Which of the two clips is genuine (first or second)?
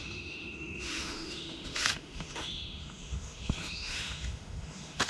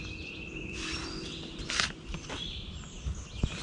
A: second